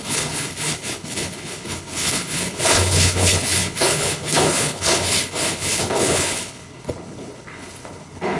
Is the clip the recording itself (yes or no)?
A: no